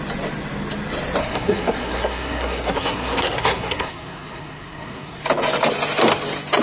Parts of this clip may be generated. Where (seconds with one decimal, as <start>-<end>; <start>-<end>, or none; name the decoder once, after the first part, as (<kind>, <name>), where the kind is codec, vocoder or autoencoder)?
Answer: 1.2-5.2 (codec, SNAC)